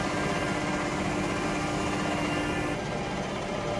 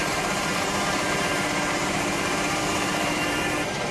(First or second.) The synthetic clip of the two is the second